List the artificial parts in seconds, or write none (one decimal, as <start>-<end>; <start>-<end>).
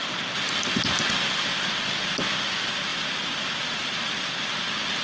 none